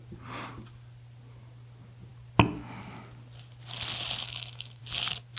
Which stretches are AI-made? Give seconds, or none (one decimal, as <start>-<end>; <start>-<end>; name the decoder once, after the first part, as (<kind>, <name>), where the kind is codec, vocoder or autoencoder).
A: 4.2-4.8 (autoencoder, DAC-VAE)